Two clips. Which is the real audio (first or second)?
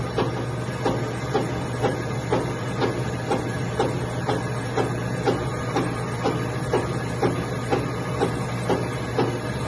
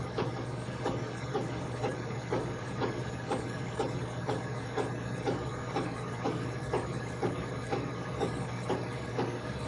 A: first